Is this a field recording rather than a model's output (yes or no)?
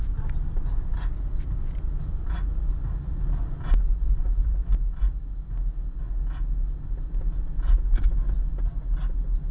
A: yes